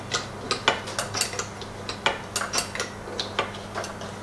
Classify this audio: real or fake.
real